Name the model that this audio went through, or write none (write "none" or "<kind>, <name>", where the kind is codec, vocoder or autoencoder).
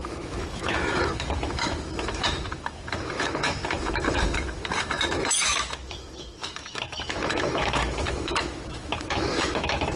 autoencoder, DAC-VAE